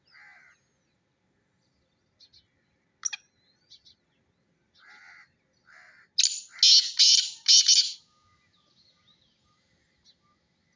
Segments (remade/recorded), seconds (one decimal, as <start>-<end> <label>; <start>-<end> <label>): 0.0-10.8 recorded